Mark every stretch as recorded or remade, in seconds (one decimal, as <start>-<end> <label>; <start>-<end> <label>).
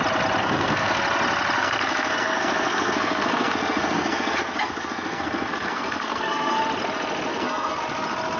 0.0-0.4 recorded; 0.4-1.0 remade; 1.0-1.6 recorded; 1.6-6.6 remade; 6.6-7.3 recorded; 7.3-7.8 remade; 7.8-8.4 recorded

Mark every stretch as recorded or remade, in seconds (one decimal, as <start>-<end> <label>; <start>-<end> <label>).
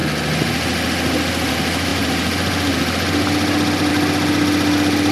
0.0-5.1 recorded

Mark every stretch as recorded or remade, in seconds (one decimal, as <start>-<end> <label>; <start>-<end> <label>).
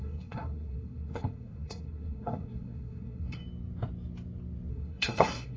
0.0-3.4 remade; 3.4-4.7 recorded; 4.7-5.6 remade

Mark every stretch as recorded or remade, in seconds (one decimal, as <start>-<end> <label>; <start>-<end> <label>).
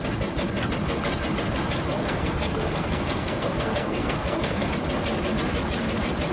0.0-2.0 recorded; 2.0-4.7 remade; 4.7-6.3 recorded